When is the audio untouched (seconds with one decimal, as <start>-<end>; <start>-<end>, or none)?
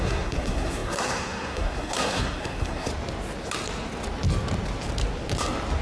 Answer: 2.9-5.8